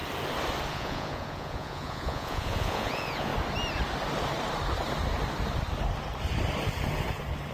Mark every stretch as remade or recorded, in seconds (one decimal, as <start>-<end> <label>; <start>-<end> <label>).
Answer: 0.0-0.7 recorded; 0.7-3.3 remade; 3.3-7.5 recorded

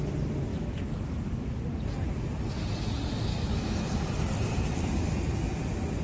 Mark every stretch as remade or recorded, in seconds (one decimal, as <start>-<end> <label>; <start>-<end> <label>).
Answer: 0.0-0.5 recorded; 0.5-1.6 remade; 1.6-3.3 recorded; 3.3-4.0 remade; 4.0-6.0 recorded